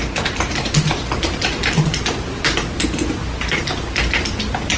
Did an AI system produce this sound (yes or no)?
no